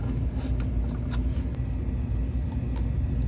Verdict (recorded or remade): recorded